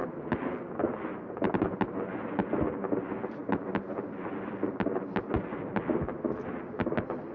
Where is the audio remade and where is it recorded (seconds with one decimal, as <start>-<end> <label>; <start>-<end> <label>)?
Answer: 0.0-7.3 recorded